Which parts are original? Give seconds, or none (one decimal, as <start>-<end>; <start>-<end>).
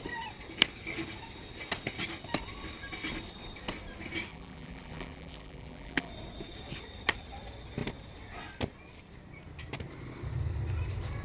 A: 0.0-4.3; 6.1-11.2